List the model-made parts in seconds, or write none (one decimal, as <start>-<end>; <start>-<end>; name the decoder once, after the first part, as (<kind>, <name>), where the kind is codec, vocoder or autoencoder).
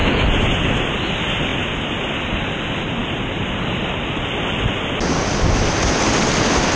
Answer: none